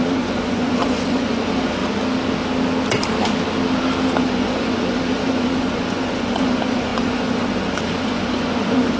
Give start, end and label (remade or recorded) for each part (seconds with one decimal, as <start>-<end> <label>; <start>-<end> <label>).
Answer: 0.0-1.8 remade; 1.8-4.2 recorded; 4.2-9.0 remade